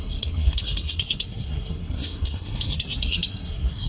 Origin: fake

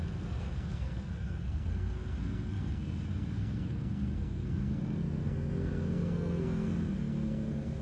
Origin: fake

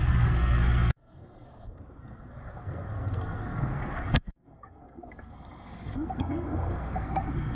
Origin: fake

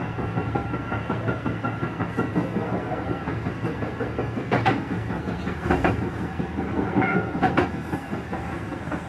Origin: fake